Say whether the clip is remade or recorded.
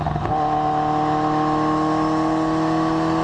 recorded